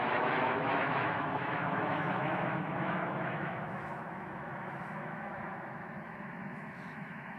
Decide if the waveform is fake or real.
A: fake